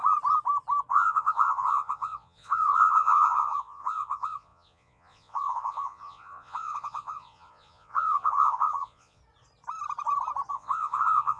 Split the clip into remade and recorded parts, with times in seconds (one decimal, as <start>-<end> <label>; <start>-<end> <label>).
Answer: 0.0-0.9 recorded; 0.9-9.2 remade; 9.2-10.5 recorded; 10.5-11.4 remade